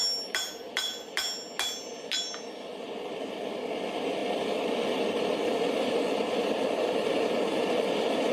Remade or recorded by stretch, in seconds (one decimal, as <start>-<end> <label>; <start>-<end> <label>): 0.0-6.4 recorded; 6.4-7.3 remade; 7.3-8.3 recorded